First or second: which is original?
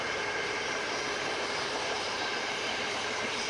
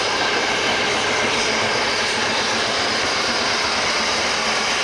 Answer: second